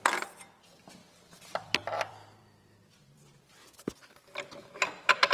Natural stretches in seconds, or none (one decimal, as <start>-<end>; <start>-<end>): 0.0-1.0; 3.5-5.3